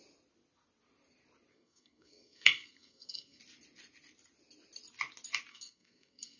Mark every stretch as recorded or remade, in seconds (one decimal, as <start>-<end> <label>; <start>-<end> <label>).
0.0-1.5 recorded; 1.5-3.4 remade; 3.4-5.5 recorded; 5.5-6.4 remade